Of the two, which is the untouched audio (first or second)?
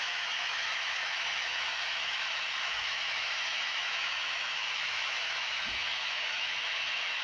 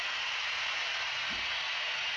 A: second